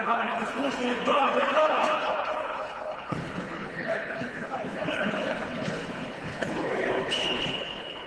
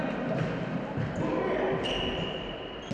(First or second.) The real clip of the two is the second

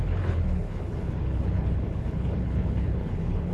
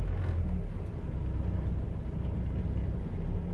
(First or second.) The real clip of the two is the second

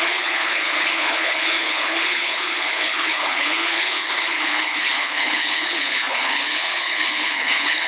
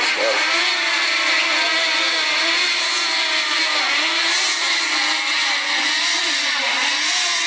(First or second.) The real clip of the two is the second